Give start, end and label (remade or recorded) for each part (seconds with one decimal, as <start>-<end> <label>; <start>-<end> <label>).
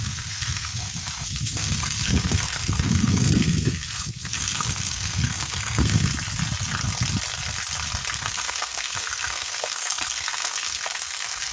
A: 0.0-6.1 remade; 6.1-8.1 recorded; 8.1-11.5 remade